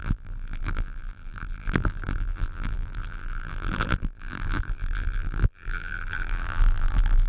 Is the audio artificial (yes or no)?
yes